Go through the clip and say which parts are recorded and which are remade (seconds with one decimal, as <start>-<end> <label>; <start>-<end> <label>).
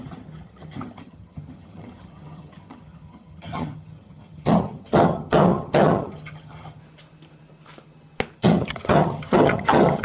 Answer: 0.0-6.8 remade; 6.8-8.4 recorded; 8.4-10.0 remade